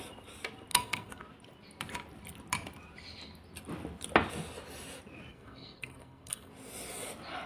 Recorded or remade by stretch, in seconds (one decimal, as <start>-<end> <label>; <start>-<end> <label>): 0.0-0.7 recorded; 0.7-1.2 remade; 1.2-5.3 recorded; 5.3-6.5 remade; 6.5-7.5 recorded